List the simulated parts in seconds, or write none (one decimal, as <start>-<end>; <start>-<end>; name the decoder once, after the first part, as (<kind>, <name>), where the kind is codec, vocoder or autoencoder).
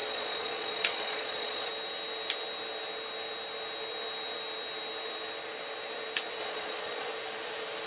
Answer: 0.0-1.7 (vocoder, Vocos); 6.4-7.1